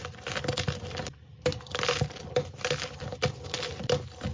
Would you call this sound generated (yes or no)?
no